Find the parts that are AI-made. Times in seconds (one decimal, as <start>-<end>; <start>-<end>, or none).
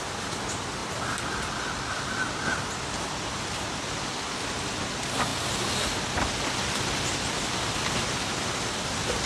none